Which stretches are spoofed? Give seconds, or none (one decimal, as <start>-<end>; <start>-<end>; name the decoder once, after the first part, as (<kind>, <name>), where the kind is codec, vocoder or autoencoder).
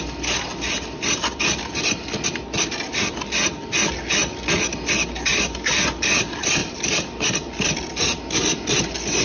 0.5-1.4 (vocoder, BigVGAN v2); 5.3-5.8; 6.6-8.0